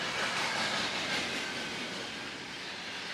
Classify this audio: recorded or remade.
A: recorded